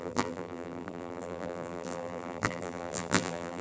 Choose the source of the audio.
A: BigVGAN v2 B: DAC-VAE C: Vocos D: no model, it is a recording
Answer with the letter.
A